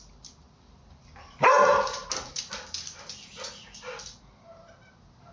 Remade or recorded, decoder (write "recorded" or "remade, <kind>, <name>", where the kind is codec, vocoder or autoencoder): recorded